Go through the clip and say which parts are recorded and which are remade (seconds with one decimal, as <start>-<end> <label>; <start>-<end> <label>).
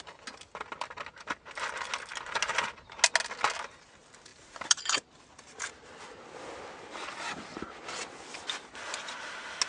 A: 0.0-4.3 recorded; 4.3-5.5 remade; 5.5-9.7 recorded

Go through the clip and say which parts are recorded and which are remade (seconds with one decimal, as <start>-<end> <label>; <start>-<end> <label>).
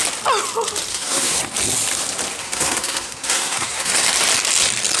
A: 0.0-0.9 recorded; 0.9-1.4 remade; 1.4-2.4 recorded; 2.4-3.9 remade; 3.9-5.0 recorded